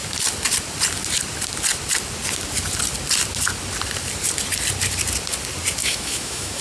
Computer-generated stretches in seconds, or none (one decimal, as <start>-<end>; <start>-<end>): 5.8-6.6